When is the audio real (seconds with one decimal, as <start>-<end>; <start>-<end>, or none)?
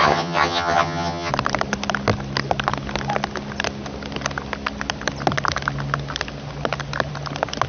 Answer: 1.3-7.7